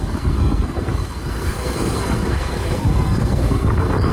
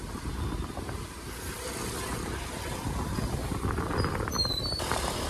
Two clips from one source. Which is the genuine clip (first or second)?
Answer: second